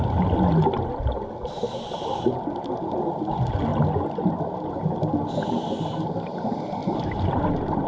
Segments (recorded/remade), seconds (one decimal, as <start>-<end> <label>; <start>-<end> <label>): 0.0-7.9 recorded